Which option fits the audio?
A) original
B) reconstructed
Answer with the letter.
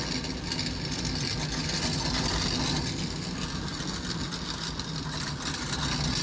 A